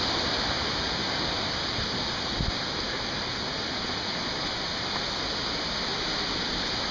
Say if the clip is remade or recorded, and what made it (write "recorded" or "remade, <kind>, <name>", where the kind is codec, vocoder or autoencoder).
recorded